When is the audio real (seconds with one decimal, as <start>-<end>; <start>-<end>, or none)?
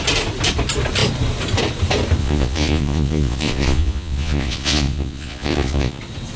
0.0-2.2; 6.0-6.4